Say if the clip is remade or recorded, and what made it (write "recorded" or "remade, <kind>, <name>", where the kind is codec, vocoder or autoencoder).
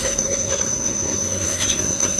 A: remade, codec, SNAC